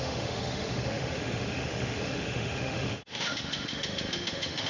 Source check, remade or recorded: remade